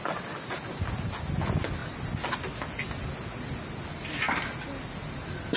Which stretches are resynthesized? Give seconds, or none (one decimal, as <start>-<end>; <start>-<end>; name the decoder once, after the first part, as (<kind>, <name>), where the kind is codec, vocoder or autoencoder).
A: none